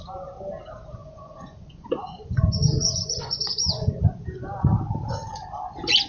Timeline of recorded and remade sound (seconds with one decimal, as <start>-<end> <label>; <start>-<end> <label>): 0.0-1.0 recorded; 1.0-4.0 remade; 4.0-6.1 recorded